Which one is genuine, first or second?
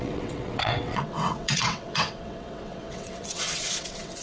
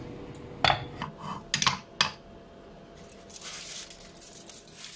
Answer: second